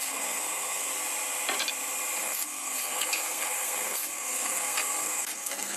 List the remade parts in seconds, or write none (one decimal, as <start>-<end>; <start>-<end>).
0.0-0.9; 2.2-5.8

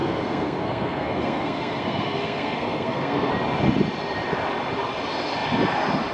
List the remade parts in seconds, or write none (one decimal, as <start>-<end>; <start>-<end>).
0.0-3.3